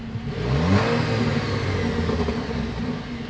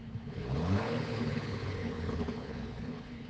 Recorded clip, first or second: first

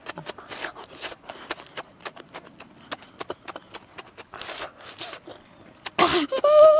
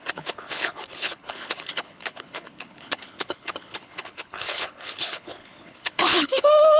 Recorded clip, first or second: first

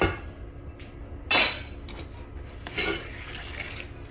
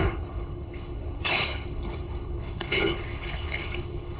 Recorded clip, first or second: first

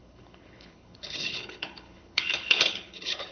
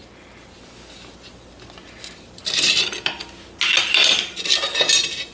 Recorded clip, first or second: second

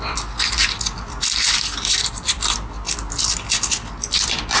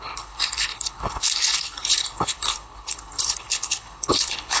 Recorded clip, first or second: first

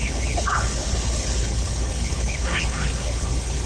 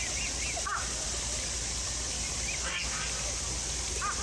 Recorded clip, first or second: second